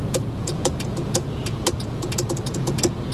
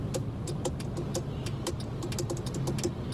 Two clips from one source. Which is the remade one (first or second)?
first